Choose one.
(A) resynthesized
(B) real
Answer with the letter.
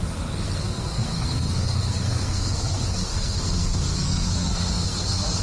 A